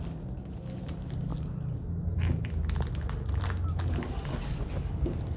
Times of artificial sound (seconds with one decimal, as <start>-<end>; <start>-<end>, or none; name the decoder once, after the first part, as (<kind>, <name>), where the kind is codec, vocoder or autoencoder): none